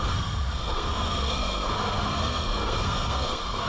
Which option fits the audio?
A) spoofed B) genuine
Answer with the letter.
A